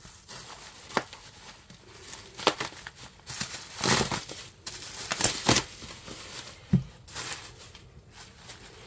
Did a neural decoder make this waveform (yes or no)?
no